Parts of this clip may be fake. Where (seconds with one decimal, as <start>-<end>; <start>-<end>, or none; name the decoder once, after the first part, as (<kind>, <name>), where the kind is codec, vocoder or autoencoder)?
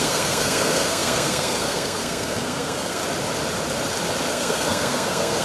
0.0-3.0 (codec, SNAC); 4.3-5.4